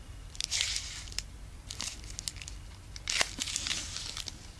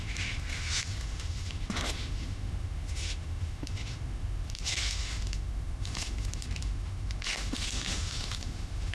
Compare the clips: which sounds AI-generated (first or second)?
second